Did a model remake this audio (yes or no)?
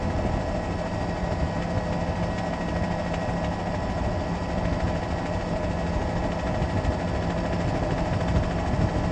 no